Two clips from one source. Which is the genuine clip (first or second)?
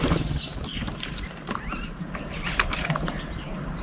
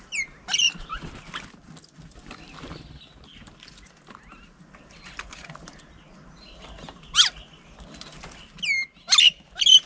second